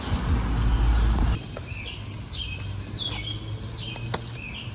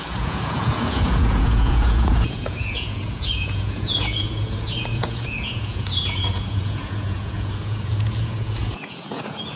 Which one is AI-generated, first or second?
second